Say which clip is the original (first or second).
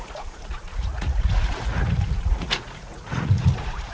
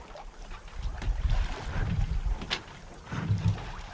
second